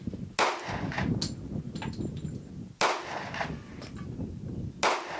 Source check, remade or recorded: recorded